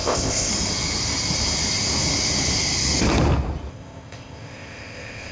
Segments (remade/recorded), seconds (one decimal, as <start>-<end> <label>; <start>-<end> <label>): 0.0-0.5 remade; 0.5-3.7 recorded; 3.7-5.3 remade